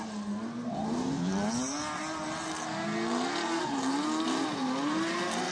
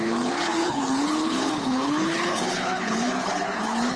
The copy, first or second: second